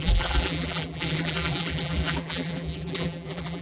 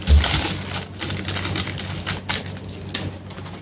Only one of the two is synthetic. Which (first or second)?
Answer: first